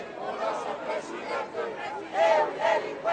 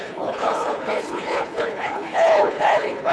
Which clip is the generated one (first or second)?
second